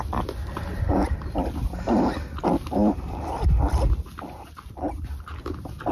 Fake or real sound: real